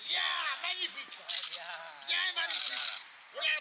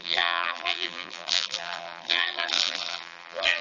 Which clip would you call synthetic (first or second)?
second